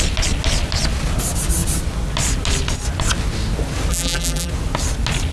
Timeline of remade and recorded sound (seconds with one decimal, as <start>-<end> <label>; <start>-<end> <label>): 0.0-3.9 recorded; 3.9-4.5 remade; 4.5-5.3 recorded

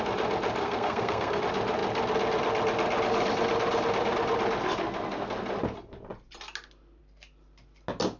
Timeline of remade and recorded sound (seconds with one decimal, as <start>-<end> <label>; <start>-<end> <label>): 0.0-0.6 recorded; 0.6-1.4 remade; 1.4-8.2 recorded

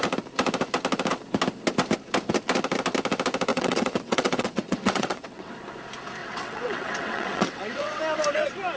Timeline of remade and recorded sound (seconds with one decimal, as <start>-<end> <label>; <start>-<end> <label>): 0.0-3.5 recorded; 3.5-5.5 remade; 5.5-6.2 recorded; 6.2-8.0 remade; 8.0-8.8 recorded

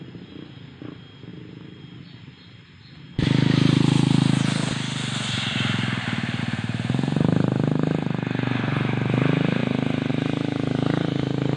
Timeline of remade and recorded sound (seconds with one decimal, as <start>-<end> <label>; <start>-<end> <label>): 0.0-11.6 recorded